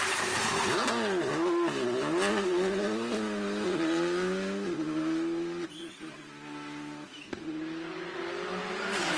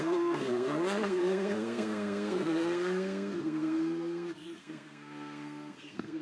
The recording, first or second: first